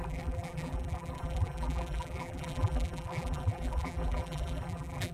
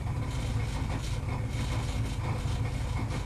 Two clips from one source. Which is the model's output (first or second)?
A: first